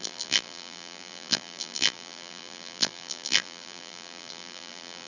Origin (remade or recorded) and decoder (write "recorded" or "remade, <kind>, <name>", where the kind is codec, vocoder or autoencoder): remade, vocoder, BigVGAN v2